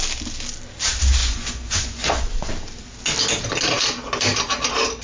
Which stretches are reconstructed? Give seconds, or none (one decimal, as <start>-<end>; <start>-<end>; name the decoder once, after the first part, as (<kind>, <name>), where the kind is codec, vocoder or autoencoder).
1.2-2.5 (vocoder, Vocos)